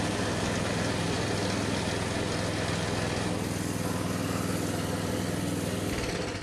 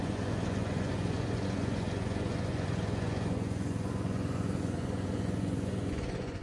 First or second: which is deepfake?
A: second